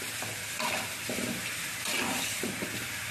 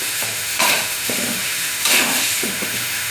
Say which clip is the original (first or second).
first